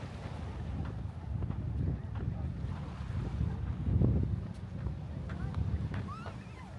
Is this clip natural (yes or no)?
yes